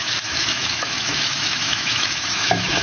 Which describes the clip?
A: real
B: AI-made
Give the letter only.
B